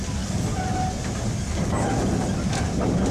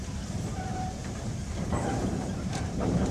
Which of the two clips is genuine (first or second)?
first